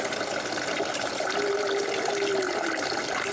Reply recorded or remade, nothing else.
recorded